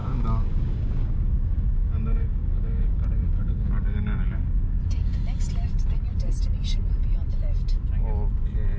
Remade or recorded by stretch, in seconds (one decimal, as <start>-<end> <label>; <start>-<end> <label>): 0.0-4.8 remade; 4.8-8.8 recorded

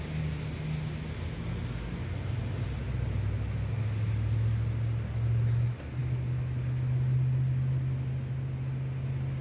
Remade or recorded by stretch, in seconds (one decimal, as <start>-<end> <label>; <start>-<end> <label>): 0.0-9.4 recorded